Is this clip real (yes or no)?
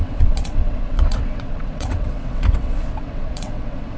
no